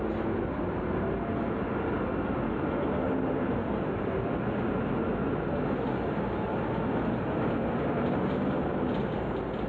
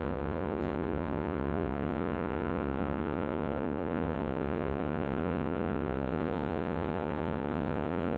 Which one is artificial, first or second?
second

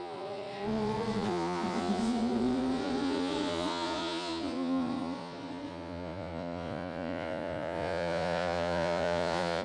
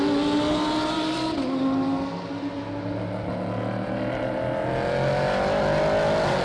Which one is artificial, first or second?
first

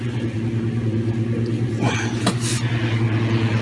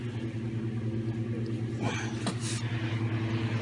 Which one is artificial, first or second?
first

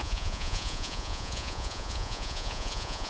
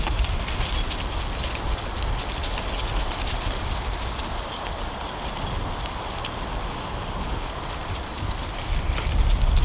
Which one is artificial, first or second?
first